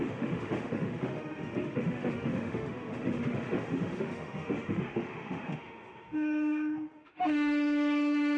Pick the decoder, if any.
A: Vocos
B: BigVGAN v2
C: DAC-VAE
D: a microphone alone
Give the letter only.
C